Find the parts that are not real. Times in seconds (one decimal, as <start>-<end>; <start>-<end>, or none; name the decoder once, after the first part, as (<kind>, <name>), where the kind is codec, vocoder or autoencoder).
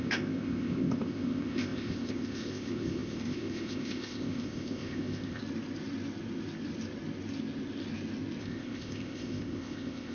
0.0-5.4 (codec, ZipCodec); 8.4-10.1